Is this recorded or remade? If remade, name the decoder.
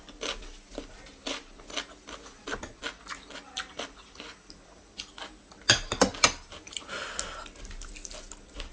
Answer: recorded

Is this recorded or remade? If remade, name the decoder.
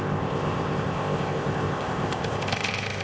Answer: remade, codec, ZipCodec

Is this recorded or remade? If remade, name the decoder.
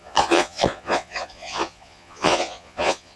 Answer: remade, vocoder, Vocos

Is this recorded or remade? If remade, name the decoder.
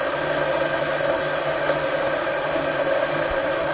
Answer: recorded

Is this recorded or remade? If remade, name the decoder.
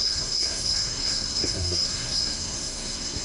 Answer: remade, codec, SNAC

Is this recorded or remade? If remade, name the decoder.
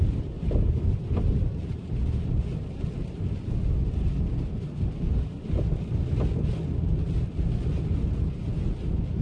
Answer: recorded